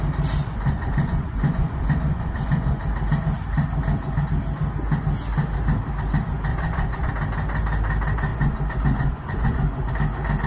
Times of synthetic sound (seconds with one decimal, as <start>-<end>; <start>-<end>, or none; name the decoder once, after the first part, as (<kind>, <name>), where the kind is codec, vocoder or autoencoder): 0.4-2.8 (vocoder, Vocos); 6.5-7.1; 8.3-9.9